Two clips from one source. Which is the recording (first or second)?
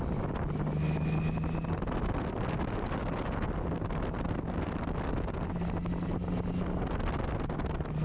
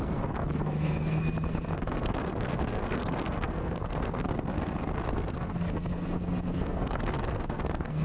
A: first